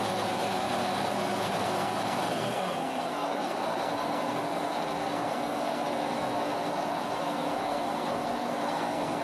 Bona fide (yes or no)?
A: no